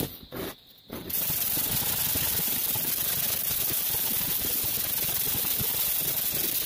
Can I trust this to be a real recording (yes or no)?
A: yes